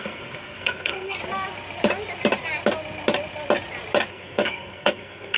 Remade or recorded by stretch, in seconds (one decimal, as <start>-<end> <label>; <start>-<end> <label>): 0.0-1.2 remade; 1.2-4.1 recorded; 4.1-5.4 remade